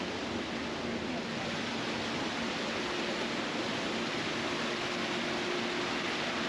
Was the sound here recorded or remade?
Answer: recorded